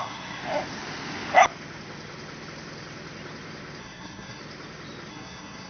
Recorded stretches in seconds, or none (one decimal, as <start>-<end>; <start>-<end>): 0.4-3.8; 4.4-5.1